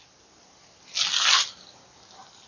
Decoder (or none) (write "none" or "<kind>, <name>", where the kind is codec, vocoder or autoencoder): none